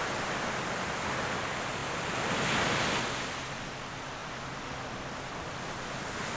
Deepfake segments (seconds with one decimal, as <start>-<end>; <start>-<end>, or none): none